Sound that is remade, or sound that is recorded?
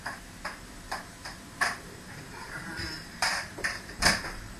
remade